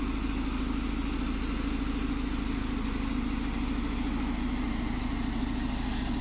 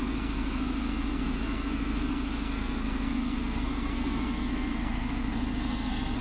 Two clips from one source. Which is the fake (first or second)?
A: second